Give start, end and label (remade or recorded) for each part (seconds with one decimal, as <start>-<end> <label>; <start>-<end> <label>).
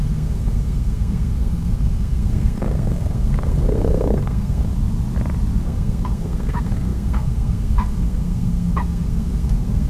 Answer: 0.0-4.7 remade; 4.7-5.6 recorded; 5.6-9.9 remade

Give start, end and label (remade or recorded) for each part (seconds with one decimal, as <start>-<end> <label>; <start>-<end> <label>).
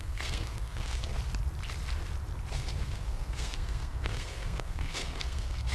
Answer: 0.0-1.1 remade; 1.1-2.5 recorded; 2.5-5.7 remade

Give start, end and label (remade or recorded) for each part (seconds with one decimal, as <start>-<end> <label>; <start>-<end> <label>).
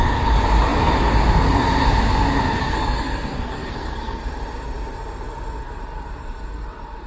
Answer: 0.0-2.6 recorded; 2.6-4.2 remade; 4.2-7.1 recorded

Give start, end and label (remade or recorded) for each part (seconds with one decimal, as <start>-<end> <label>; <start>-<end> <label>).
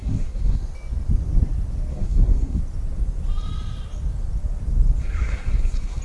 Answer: 0.0-0.6 remade; 0.6-1.9 recorded; 1.9-2.6 remade; 2.6-5.0 recorded; 5.0-6.0 remade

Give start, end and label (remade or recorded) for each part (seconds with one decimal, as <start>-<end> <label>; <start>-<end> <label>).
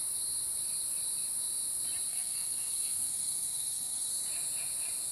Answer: 0.0-2.1 recorded; 2.1-4.1 remade; 4.1-5.1 recorded